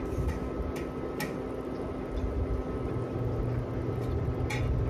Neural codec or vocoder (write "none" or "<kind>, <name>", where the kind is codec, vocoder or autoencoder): none